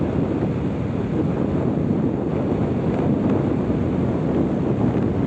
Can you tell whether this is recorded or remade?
recorded